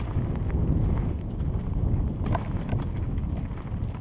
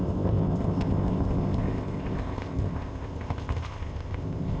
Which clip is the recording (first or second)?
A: first